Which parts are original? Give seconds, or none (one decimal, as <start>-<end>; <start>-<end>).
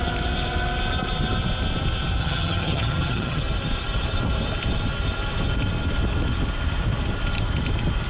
0.0-2.2; 3.4-8.1